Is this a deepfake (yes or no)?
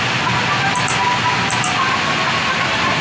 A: no